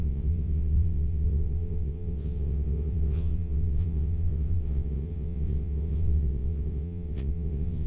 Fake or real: fake